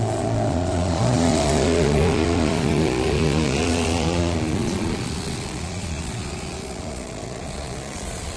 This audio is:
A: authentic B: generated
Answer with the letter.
B